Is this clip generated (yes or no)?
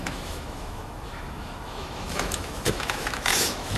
yes